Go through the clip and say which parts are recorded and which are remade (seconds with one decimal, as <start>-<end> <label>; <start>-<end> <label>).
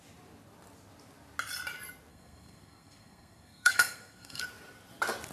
0.0-2.1 recorded; 2.1-4.4 remade; 4.4-5.3 recorded